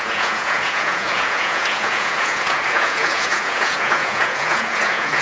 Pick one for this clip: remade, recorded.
remade